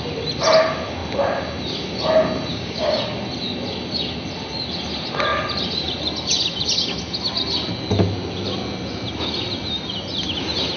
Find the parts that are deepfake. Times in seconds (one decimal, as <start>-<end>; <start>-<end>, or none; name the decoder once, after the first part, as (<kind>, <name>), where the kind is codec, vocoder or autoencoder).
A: 2.5-3.0 (codec, DAC)